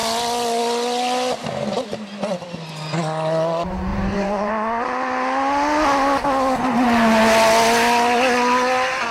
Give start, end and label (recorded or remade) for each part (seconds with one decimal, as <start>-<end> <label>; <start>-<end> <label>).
0.0-3.9 recorded; 3.9-4.5 remade; 4.5-9.1 recorded